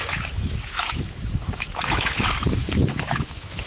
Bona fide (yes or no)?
no